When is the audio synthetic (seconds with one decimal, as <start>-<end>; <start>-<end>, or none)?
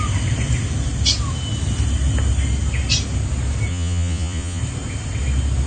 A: 3.7-4.6